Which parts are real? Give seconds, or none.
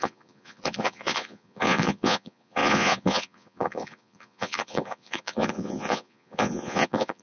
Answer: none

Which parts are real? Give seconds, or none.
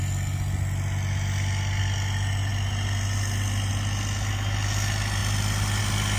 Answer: 0.0-6.2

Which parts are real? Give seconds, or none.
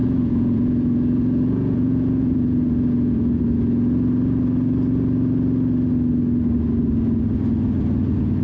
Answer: 3.4-8.4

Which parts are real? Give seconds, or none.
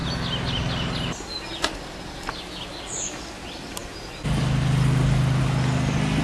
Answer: 0.0-6.2